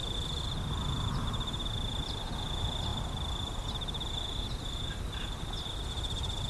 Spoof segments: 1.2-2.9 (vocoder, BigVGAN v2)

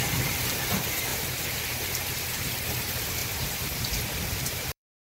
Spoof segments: 0.0-5.0 (vocoder, BigVGAN v2)

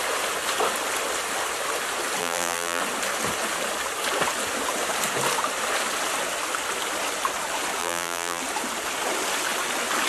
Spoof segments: 2.2-2.8 (vocoder, BigVGAN v2); 7.8-8.4

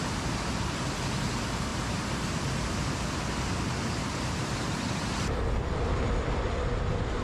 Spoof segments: 4.0-5.2 (vocoder, BigVGAN v2)

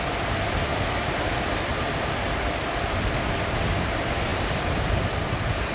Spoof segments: 0.0-1.7 (vocoder, BigVGAN v2); 2.4-5.7

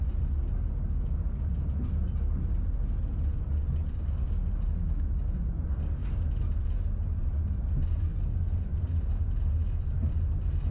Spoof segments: none